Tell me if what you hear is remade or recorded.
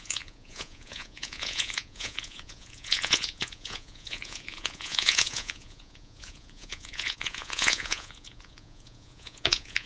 remade